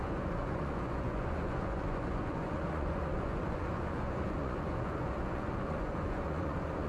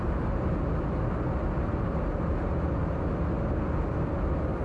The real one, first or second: second